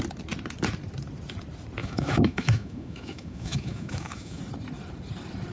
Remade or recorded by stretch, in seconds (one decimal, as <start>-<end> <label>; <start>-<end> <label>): 0.0-1.8 recorded; 1.8-4.4 remade; 4.4-5.5 recorded

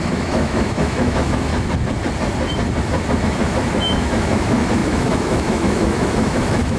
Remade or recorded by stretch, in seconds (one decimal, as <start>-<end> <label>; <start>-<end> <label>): 0.0-1.5 remade; 1.5-3.2 recorded; 3.2-6.8 remade

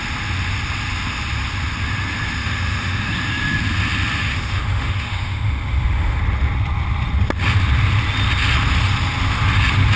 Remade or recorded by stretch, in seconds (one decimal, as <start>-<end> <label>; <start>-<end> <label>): 0.0-2.4 recorded; 2.4-3.1 remade; 3.1-4.2 recorded; 4.2-6.2 remade; 6.2-10.0 recorded

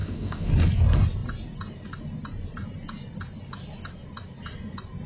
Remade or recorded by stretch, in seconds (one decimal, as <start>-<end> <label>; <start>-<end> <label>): 0.0-0.5 remade; 0.5-5.1 recorded

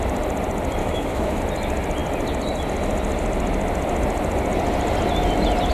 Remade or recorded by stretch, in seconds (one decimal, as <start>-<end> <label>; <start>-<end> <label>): 0.0-0.8 recorded; 0.8-1.4 remade; 1.4-5.7 recorded

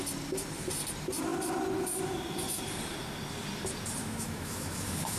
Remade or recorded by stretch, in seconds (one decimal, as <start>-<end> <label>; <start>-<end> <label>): 0.0-4.0 recorded; 4.0-5.2 remade